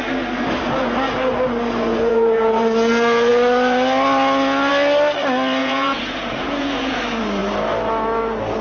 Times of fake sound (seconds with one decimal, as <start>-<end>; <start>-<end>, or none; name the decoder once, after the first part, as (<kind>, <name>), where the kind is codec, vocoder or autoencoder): 1.9-2.6 (vocoder, Vocos); 5.6-7.0